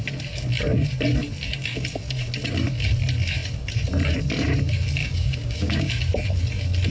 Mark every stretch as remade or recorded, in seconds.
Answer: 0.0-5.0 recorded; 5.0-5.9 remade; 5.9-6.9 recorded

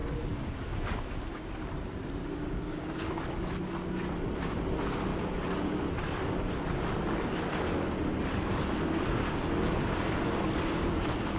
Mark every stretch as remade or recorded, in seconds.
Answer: 0.0-1.5 remade; 1.5-2.2 recorded; 2.2-3.1 remade; 3.1-11.4 recorded

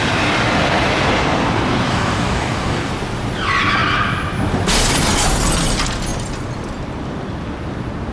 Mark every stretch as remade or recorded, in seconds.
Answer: 0.0-1.9 recorded; 1.9-2.9 remade; 2.9-8.1 recorded